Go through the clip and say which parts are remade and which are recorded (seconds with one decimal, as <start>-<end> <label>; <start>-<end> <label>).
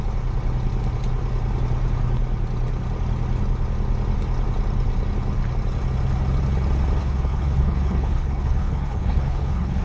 0.0-7.0 recorded; 7.0-9.8 remade